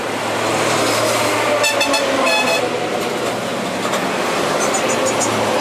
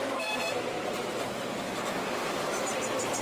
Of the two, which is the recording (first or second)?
first